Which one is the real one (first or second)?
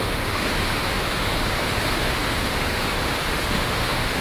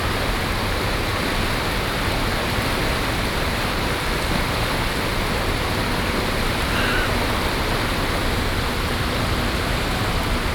second